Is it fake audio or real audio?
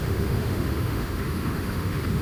fake